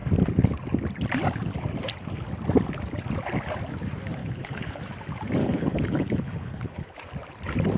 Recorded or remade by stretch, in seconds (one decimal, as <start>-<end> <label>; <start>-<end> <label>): 0.0-4.2 recorded; 4.2-4.8 remade; 4.8-5.4 recorded; 5.4-7.0 remade; 7.0-7.8 recorded